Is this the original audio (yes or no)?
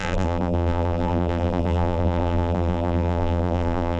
no